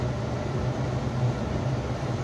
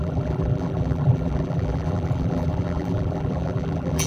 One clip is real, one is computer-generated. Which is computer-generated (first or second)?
second